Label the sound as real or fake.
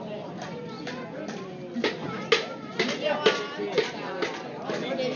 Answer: real